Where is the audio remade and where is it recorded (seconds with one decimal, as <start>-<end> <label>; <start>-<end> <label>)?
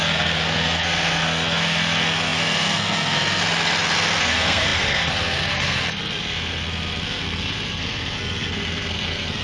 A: 0.0-3.4 remade; 3.4-4.2 recorded; 4.2-9.4 remade